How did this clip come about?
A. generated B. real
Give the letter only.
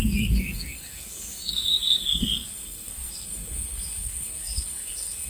A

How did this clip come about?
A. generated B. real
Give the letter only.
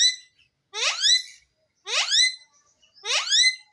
B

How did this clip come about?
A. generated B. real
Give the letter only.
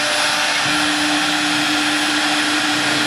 B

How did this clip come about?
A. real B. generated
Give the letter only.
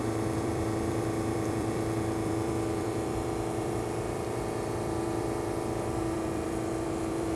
B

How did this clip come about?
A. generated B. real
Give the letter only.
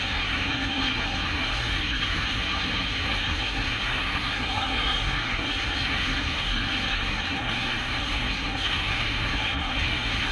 A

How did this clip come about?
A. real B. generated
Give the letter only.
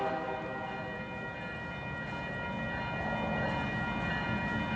A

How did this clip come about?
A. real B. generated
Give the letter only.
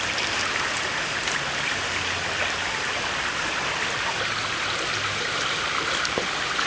A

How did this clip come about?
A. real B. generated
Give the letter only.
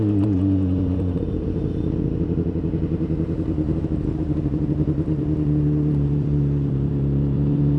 B